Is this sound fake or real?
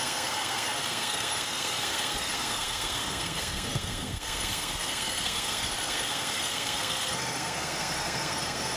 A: fake